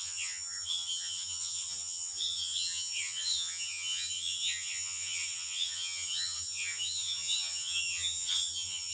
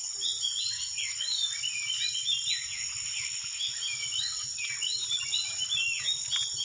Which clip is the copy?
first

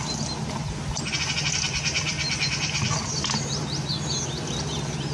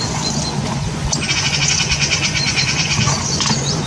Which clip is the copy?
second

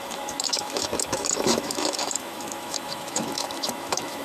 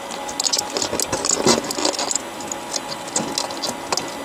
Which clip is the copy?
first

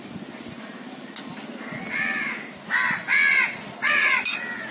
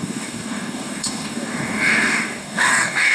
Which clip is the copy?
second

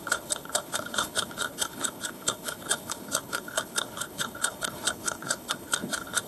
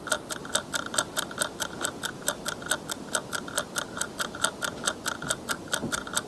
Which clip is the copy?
first